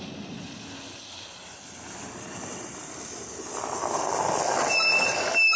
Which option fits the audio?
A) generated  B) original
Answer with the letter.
B